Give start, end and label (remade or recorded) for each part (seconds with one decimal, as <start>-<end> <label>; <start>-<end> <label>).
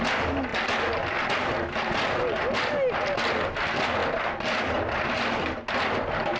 0.0-0.5 recorded; 0.5-1.3 remade; 1.3-4.0 recorded; 4.0-5.4 remade; 5.4-6.4 recorded